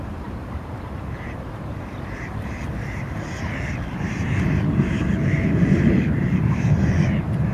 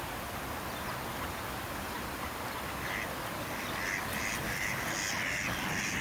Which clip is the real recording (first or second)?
second